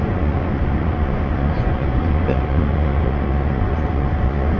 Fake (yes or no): yes